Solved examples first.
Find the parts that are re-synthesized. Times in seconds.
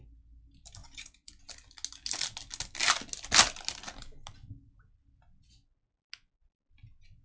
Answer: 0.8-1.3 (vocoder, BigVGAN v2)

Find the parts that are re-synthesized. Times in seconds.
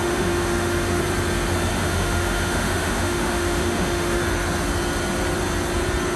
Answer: 0.0-1.0 (autoencoder, DAC-VAE); 1.7-4.2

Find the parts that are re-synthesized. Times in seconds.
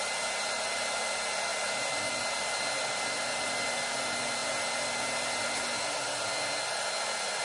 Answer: none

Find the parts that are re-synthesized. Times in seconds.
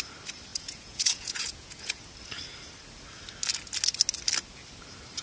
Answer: 0.5-2.0 (vocoder, Vocos)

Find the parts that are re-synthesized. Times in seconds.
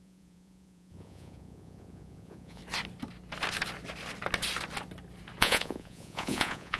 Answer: 0.0-2.6 (vocoder, Vocos); 5.4-6.8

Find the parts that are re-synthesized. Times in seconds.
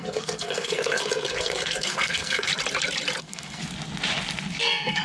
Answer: 0.0-2.5 (codec, SNAC); 3.2-3.6; 4.6-5.0